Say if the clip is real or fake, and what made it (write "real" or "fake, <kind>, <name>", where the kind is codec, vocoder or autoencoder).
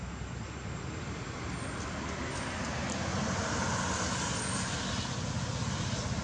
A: real